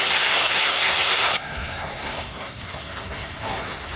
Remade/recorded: remade